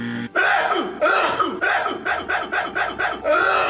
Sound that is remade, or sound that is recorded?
recorded